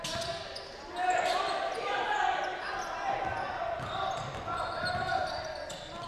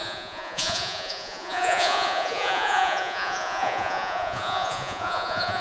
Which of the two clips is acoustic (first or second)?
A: first